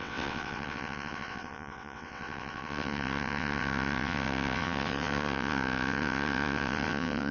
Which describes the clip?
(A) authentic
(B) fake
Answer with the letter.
B